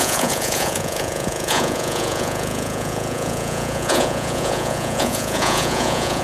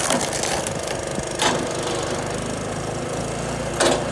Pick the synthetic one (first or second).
first